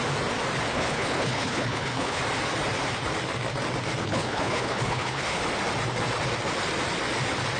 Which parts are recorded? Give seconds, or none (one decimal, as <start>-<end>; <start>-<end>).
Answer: 0.0-0.7; 2.2-4.0; 5.4-7.6